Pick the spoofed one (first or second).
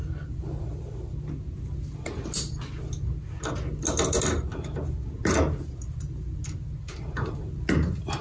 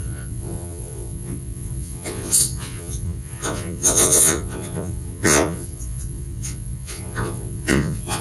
second